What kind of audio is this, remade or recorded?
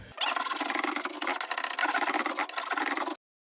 recorded